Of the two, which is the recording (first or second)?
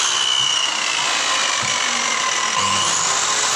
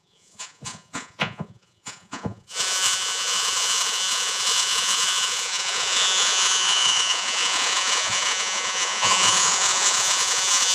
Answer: first